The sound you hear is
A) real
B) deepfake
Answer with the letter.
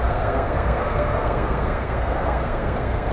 B